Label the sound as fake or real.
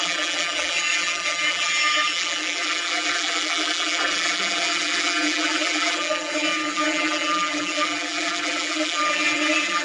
fake